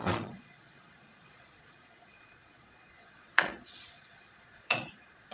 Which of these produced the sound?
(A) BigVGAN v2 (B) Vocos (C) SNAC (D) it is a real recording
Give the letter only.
B